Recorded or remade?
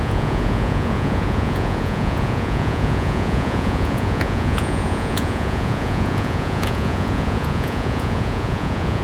remade